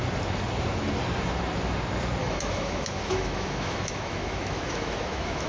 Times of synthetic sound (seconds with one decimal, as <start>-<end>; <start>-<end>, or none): 2.2-5.5